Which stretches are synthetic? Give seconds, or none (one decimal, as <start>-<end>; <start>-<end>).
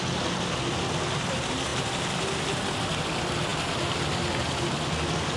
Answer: none